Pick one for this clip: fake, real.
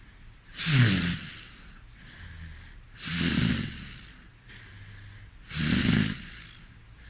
real